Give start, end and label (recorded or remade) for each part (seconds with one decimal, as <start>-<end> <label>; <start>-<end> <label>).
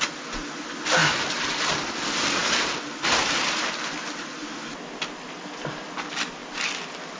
0.0-7.2 recorded